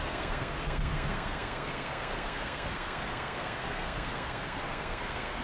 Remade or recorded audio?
remade